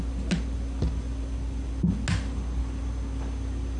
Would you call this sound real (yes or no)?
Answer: yes